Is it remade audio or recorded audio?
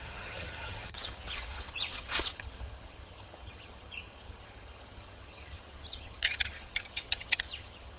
remade